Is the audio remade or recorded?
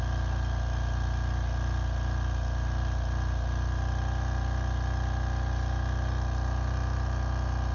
recorded